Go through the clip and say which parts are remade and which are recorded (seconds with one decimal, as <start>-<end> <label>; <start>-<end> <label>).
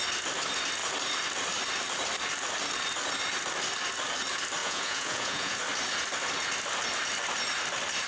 0.0-4.6 recorded; 4.6-5.6 remade; 5.6-8.1 recorded